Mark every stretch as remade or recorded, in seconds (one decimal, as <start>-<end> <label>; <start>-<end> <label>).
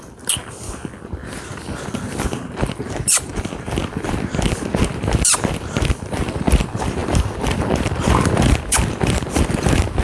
0.0-3.3 remade; 3.3-3.8 recorded; 3.8-7.0 remade; 7.0-7.6 recorded; 7.6-10.0 remade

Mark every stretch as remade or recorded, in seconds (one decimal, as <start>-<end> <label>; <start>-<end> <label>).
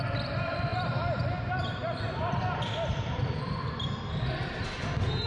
0.0-0.7 recorded; 0.7-3.9 remade; 3.9-5.3 recorded